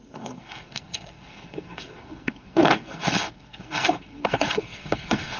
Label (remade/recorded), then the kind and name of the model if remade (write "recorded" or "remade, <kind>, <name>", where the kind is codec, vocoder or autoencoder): remade, codec, SNAC